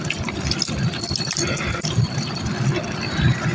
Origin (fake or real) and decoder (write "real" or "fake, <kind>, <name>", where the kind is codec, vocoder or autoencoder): real